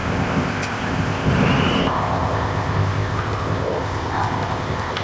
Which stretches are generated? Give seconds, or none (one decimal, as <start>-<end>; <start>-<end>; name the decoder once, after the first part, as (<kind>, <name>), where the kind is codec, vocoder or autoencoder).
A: 0.0-1.3 (codec, ZipCodec); 1.8-5.0

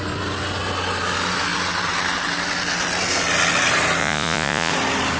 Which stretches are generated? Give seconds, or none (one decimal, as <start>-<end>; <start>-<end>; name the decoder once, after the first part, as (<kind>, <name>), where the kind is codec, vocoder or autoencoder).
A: 4.0-4.7 (vocoder, Vocos)

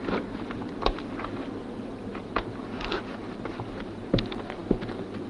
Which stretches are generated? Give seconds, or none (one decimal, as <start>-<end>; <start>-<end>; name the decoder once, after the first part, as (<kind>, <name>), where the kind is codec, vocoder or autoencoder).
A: none

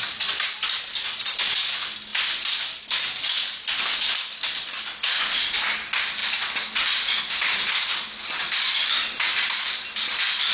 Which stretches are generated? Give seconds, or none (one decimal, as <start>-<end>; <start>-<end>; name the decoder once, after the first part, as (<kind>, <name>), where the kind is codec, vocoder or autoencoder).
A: 2.1-2.8 (vocoder, BigVGAN v2)

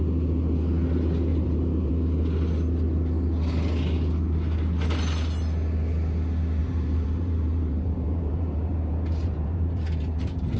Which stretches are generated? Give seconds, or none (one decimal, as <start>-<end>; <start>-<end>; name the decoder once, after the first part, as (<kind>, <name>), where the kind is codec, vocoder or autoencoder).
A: 1.3-1.9 (vocoder, BigVGAN v2); 6.6-10.6

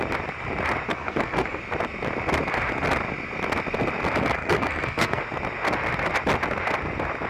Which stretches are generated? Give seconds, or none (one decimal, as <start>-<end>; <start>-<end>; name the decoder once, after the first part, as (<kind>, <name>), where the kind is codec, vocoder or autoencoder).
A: 0.9-1.6 (codec, SNAC); 4.4-5.2

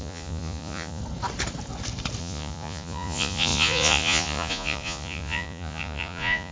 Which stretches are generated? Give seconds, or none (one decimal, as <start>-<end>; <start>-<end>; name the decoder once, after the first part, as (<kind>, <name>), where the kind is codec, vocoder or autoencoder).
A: 0.0-1.0 (vocoder, Vocos); 2.2-6.5

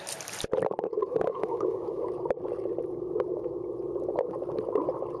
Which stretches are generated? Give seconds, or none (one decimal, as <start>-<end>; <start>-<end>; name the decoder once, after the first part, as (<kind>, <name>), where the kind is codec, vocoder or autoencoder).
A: 1.0-2.0 (autoencoder, DAC-VAE)